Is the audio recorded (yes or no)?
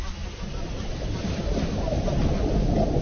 yes